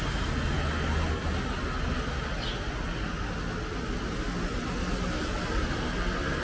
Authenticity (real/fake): real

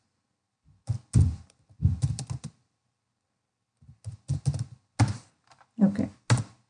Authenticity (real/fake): real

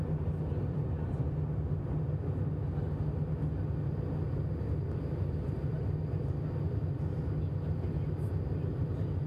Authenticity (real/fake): real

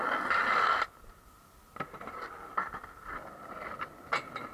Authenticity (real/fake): real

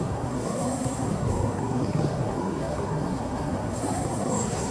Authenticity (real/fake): fake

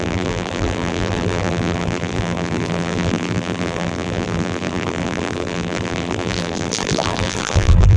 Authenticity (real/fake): fake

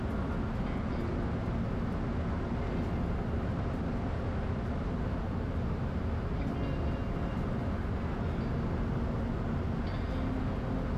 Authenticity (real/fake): real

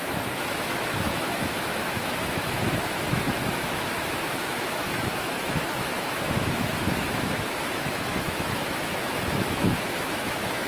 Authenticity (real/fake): fake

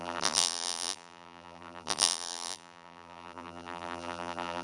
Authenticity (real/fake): fake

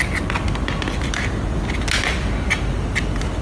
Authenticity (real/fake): real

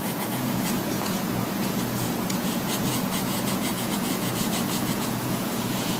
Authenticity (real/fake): fake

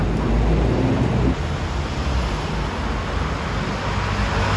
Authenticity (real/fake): real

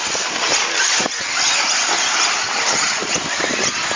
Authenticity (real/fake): real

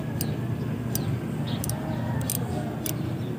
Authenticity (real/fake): real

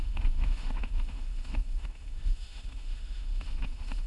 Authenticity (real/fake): fake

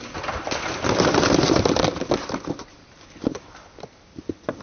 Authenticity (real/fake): real